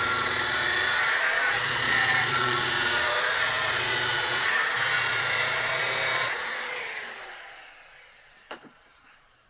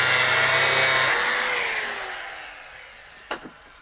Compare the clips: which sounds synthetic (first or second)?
first